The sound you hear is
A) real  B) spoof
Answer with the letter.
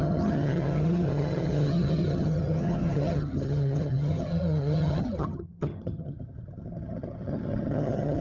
B